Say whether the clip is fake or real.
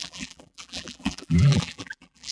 fake